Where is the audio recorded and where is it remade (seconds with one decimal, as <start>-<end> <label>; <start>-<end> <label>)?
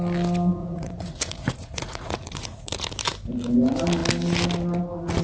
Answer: 0.0-0.6 recorded; 0.6-2.9 remade; 2.9-5.2 recorded